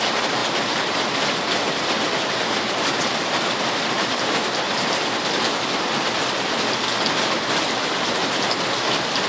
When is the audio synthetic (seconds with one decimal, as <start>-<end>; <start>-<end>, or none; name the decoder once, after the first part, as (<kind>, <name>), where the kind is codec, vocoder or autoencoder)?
none